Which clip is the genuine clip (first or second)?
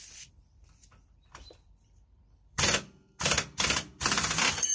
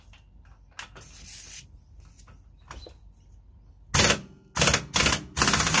second